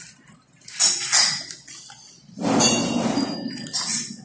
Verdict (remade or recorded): recorded